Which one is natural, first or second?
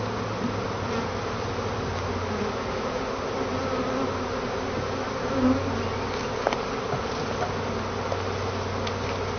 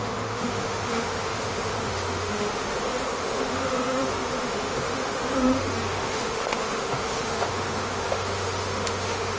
first